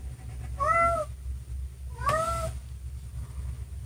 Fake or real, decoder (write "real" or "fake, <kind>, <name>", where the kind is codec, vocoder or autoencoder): real